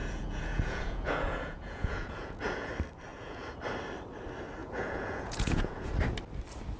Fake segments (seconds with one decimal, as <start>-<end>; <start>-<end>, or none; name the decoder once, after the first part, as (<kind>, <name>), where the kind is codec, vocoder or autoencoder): 0.0-2.7 (vocoder, Vocos); 3.1-3.6; 4.6-5.9